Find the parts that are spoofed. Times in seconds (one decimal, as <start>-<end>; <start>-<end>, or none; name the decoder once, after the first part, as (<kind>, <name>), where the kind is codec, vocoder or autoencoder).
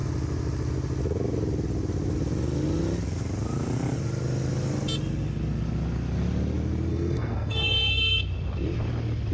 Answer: 6.9-8.2 (codec, SNAC)